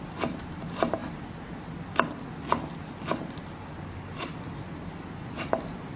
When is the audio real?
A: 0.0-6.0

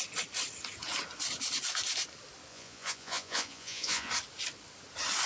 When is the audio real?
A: 0.0-2.5; 4.1-5.3

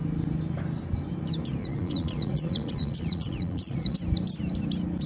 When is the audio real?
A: 0.0-1.6; 4.0-5.1